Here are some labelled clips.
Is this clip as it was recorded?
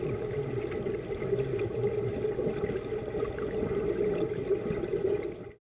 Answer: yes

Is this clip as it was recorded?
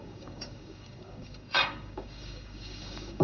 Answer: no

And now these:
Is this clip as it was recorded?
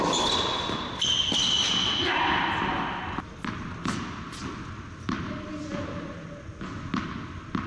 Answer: yes